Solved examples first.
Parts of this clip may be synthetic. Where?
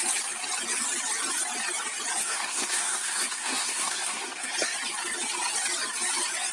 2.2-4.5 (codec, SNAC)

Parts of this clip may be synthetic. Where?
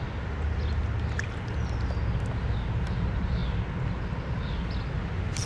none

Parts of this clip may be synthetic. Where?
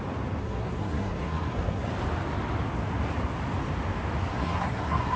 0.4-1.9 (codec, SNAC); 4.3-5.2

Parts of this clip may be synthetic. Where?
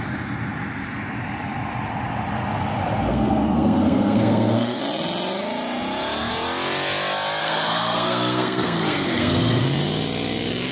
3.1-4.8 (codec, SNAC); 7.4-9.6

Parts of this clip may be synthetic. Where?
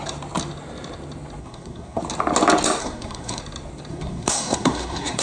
1.4-2.0 (codec, SNAC); 2.8-3.4; 3.9-5.2